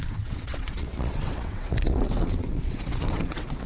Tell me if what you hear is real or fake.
fake